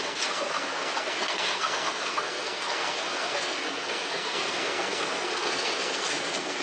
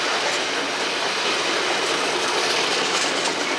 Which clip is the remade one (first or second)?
first